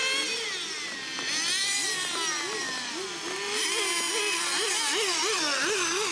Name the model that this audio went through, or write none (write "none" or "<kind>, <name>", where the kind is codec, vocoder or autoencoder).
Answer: none